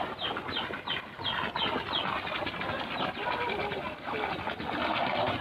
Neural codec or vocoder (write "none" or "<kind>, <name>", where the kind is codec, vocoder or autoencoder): none